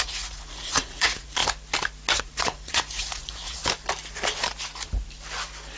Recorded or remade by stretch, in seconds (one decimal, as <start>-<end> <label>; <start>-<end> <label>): 0.0-1.4 remade; 1.4-2.2 recorded; 2.2-3.6 remade; 3.6-5.8 recorded